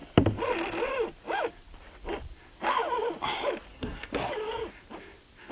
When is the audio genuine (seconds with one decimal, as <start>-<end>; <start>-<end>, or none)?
0.0-3.7; 4.3-5.5